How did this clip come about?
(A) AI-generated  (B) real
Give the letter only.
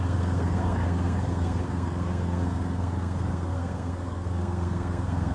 A